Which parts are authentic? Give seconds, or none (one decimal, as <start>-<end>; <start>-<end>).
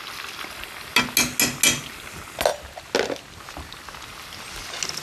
0.0-5.0